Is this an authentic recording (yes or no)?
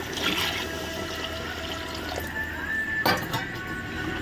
yes